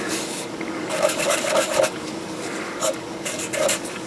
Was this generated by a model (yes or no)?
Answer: yes